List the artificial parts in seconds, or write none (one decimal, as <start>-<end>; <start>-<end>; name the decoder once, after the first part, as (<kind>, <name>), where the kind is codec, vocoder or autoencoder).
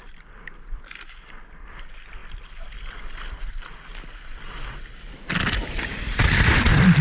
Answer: 0.0-7.0 (vocoder, BigVGAN v2)